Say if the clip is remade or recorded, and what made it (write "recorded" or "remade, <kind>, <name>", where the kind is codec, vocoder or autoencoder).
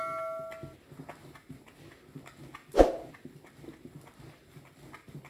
recorded